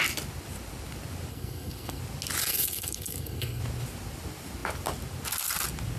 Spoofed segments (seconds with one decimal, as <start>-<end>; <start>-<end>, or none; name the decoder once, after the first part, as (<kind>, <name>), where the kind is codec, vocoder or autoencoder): 1.3-2.0 (codec, SNAC); 2.4-3.6